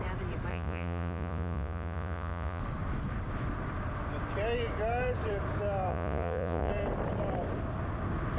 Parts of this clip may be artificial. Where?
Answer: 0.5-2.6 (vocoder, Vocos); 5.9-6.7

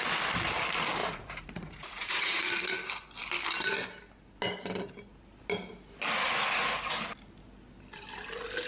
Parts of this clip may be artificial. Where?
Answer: 1.0-2.5 (vocoder, Vocos)

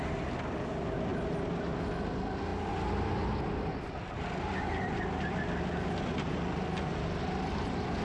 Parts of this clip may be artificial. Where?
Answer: none